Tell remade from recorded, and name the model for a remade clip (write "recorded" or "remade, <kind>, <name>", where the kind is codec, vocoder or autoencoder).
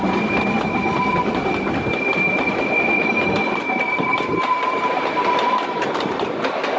remade, vocoder, BigVGAN v2